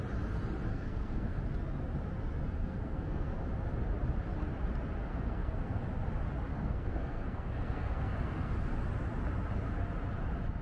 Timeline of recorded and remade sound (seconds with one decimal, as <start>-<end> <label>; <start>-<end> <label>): 0.0-0.7 recorded; 0.7-1.4 remade; 1.4-2.6 recorded; 2.6-3.3 remade; 3.3-5.1 recorded; 5.1-5.8 remade; 5.8-6.5 recorded; 6.5-8.5 remade; 8.5-10.6 recorded